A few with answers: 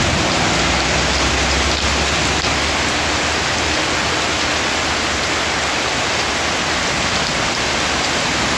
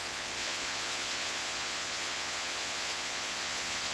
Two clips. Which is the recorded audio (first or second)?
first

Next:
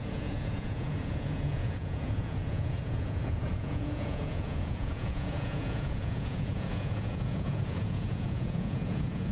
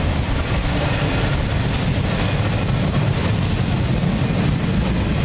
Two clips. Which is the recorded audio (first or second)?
second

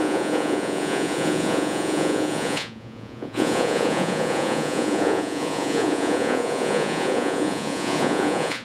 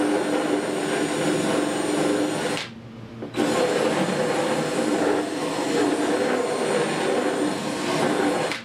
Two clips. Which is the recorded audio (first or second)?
second